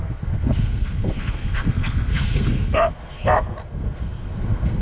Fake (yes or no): yes